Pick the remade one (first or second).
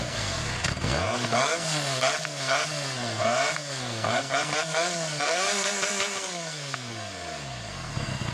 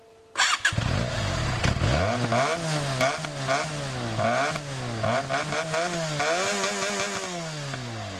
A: first